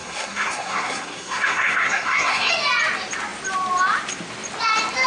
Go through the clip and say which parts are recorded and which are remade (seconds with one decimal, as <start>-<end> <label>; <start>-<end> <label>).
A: 0.0-2.5 remade; 2.5-5.1 recorded